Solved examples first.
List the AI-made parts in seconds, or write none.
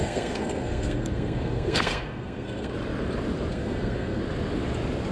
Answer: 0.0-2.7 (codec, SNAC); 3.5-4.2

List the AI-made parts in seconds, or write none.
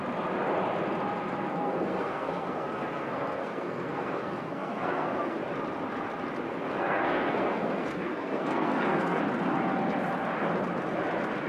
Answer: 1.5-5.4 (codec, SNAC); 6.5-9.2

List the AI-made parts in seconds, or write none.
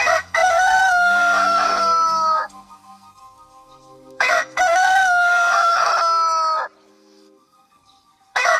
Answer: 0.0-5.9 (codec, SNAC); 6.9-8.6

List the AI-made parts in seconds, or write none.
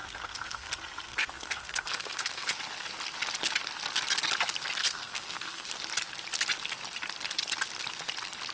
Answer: 0.0-0.7 (codec, SNAC); 1.1-2.5; 4.8-5.7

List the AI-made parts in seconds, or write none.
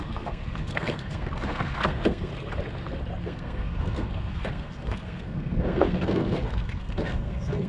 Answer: 0.0-2.3 (codec, SNAC); 3.2-7.7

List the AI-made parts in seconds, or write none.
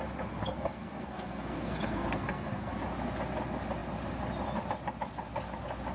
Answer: 0.4-2.7 (codec, SNAC)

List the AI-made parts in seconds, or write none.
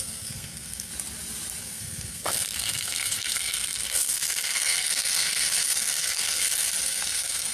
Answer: 0.0-0.9 (codec, SNAC); 1.6-7.5